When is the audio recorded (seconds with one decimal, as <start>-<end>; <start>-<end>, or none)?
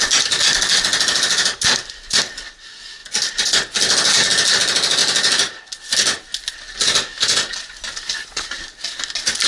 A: 0.0-9.5